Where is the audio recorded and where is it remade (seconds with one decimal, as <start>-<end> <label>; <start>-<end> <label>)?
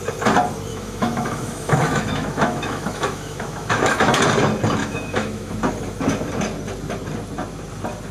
0.0-0.7 recorded; 0.7-4.2 remade; 4.2-4.8 recorded; 4.8-5.5 remade; 5.5-8.1 recorded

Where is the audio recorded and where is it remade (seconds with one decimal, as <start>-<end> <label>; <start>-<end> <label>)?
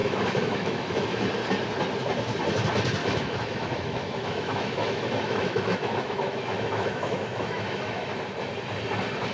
0.0-1.2 remade; 1.2-3.0 recorded; 3.0-8.2 remade; 8.2-9.3 recorded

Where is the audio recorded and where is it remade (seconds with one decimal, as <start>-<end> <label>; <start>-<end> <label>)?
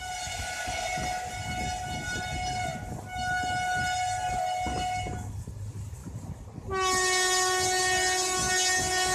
0.0-9.1 recorded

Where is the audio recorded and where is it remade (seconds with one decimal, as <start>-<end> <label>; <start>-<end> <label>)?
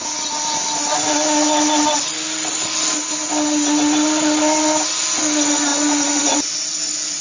0.0-7.2 recorded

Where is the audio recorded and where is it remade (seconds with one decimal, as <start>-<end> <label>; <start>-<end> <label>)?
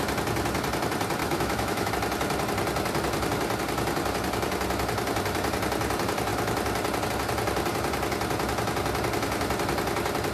0.0-1.2 recorded; 1.2-1.9 remade; 1.9-10.3 recorded